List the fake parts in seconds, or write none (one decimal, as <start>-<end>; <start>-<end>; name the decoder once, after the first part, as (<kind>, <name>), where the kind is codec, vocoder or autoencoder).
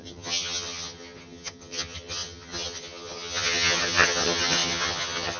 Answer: 0.0-5.4 (vocoder, HiFi-GAN)